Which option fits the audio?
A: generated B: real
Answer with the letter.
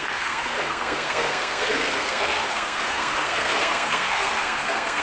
A